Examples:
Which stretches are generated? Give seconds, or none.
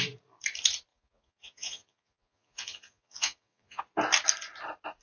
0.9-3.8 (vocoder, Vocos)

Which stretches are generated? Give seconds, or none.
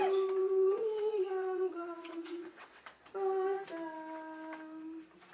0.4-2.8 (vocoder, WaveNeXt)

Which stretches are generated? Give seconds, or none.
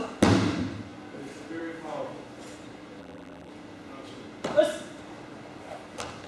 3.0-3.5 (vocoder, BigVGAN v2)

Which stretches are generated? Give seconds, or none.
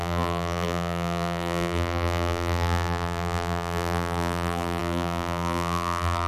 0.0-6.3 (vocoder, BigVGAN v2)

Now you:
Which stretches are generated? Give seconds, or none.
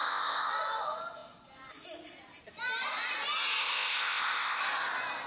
0.0-0.5 (codec, ZipCodec); 3.6-4.6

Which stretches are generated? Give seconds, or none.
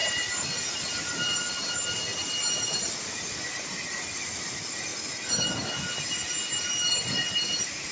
none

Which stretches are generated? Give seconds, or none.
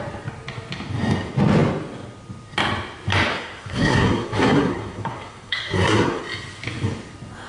3.3-6.2 (codec, SNAC)